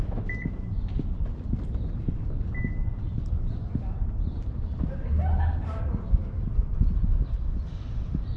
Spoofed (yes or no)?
no